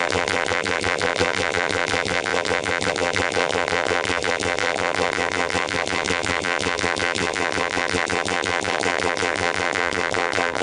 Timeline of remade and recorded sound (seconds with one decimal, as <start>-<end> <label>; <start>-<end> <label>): 0.0-10.6 remade